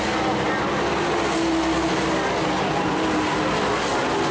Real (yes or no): yes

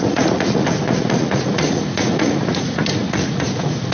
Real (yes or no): no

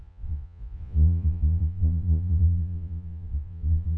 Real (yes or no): no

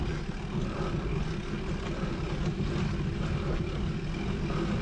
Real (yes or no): yes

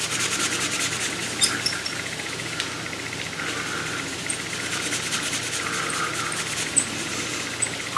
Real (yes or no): yes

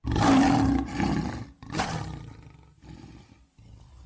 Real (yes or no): yes